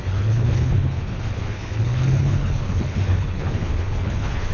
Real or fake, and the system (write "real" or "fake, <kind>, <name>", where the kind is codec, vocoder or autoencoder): fake, codec, HILCodec